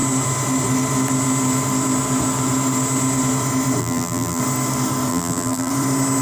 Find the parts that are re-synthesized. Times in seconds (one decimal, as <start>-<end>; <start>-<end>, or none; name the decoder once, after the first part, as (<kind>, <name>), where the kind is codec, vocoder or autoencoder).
3.8-4.4 (vocoder, BigVGAN v2); 5.1-5.7